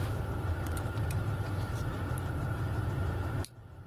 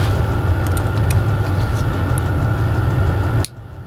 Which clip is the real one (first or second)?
second